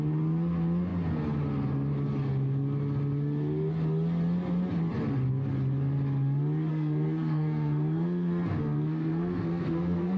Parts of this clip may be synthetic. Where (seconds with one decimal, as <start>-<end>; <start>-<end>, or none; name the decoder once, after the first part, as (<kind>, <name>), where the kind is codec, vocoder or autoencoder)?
6.7-10.2 (codec, SNAC)